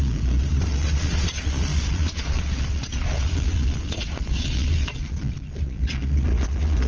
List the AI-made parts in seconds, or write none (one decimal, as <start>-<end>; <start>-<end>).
0.0-6.9